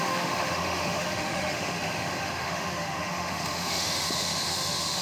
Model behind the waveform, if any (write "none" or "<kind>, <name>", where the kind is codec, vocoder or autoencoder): autoencoder, DAC-VAE